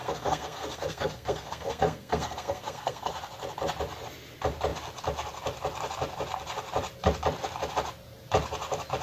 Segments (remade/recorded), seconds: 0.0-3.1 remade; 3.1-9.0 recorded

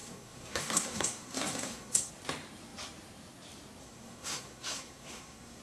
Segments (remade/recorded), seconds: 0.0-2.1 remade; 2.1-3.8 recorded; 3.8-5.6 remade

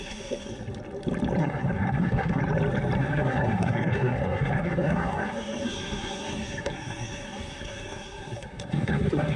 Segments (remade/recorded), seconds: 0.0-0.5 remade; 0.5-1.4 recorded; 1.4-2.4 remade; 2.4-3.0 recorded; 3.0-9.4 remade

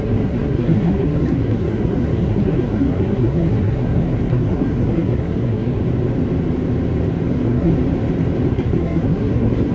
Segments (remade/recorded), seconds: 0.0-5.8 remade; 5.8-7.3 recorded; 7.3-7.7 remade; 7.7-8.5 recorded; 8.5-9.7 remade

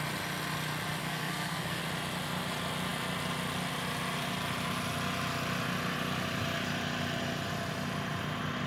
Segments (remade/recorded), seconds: 0.0-1.0 recorded; 1.0-1.8 remade; 1.8-8.7 recorded